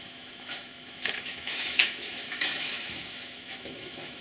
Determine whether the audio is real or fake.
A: fake